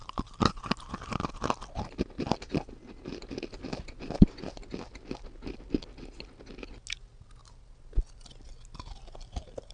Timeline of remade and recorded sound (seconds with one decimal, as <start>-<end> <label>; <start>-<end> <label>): 0.0-9.7 recorded